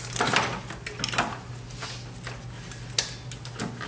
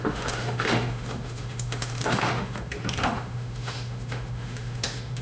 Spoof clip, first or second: second